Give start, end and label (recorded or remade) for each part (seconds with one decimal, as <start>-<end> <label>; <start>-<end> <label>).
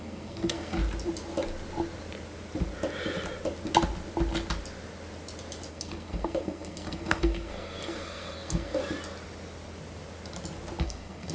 0.0-0.8 remade; 0.8-5.7 recorded; 5.7-8.8 remade; 8.8-10.8 recorded; 10.8-11.3 remade